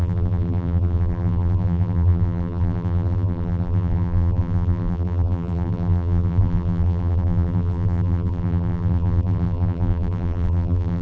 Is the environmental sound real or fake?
fake